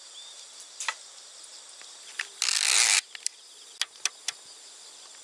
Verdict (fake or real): real